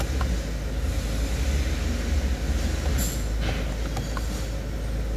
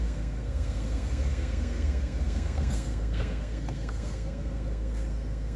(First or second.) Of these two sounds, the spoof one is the second